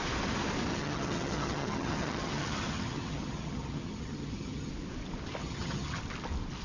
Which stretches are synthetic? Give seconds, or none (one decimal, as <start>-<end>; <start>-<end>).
0.7-4.7; 5.4-6.0